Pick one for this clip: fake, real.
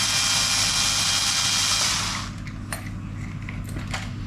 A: real